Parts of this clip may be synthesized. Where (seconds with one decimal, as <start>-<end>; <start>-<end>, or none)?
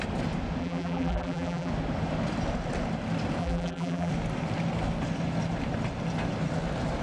0.6-1.7; 3.4-4.1